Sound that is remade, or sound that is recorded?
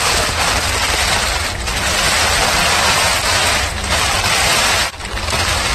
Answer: remade